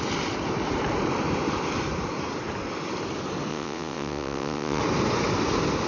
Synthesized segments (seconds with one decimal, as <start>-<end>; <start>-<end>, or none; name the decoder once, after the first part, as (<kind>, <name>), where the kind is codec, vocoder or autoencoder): 3.5-4.8 (vocoder, WaveNeXt)

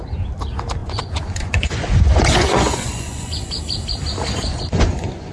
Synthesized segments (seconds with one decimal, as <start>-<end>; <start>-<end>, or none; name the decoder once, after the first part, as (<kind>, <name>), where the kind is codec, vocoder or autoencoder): 0.8-3.6 (vocoder, Vocos); 4.5-5.3